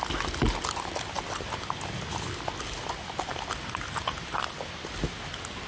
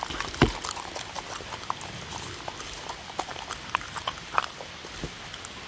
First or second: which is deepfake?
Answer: second